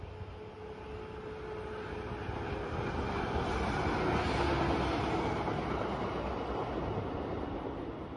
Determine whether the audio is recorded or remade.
recorded